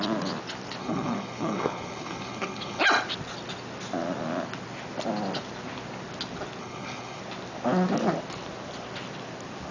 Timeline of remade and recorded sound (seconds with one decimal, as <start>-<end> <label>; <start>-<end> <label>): 0.0-0.8 recorded; 0.8-2.8 remade; 2.8-6.6 recorded; 6.6-7.2 remade; 7.2-9.7 recorded

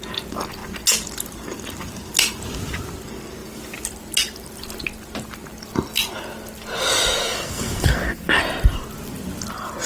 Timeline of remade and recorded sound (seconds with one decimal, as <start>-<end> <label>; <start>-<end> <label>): 0.0-7.2 recorded; 7.2-8.4 remade; 8.4-9.9 recorded

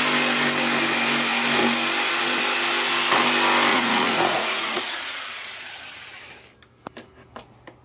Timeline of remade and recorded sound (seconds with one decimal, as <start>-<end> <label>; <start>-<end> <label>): 0.0-3.7 recorded; 3.7-5.8 remade; 5.8-7.8 recorded

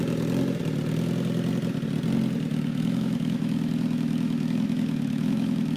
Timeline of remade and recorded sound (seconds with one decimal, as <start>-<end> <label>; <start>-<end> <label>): 0.0-2.5 recorded; 2.5-5.8 remade

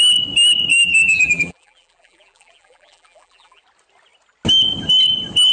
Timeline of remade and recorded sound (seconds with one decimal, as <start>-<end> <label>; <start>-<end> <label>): 0.0-0.7 recorded; 0.7-3.6 remade; 3.6-5.5 recorded

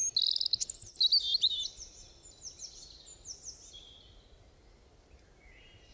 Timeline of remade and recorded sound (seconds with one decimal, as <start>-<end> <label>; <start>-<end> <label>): 0.0-5.9 recorded

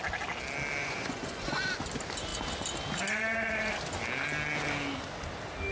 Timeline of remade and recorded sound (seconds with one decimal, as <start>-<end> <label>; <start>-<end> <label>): 0.0-0.8 recorded; 0.8-1.7 remade; 1.7-5.7 recorded